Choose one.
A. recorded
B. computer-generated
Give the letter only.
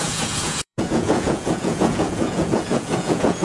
B